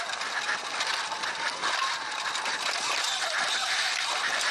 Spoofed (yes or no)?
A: no